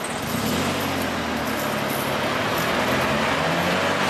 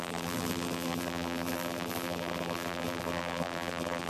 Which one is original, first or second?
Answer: first